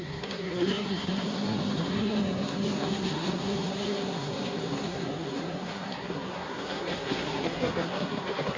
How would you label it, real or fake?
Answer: fake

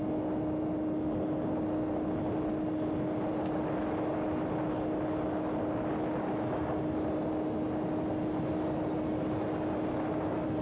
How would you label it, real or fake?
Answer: real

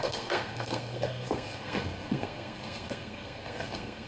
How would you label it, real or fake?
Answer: fake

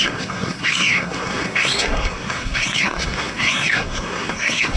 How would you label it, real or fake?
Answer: fake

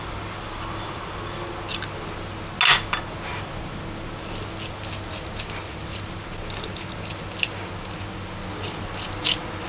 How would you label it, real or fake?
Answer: real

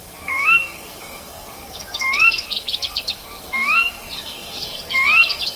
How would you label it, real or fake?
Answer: fake